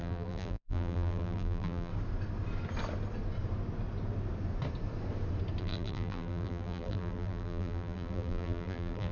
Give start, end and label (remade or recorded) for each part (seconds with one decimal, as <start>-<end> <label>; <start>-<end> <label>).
0.0-1.9 remade; 1.9-5.6 recorded; 5.6-9.1 remade